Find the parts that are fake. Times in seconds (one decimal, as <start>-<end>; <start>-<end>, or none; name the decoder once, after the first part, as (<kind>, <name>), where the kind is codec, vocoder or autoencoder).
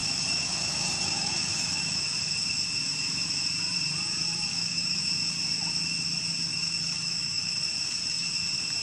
0.0-2.0 (autoencoder, DAC-VAE); 4.5-5.0; 6.5-7.6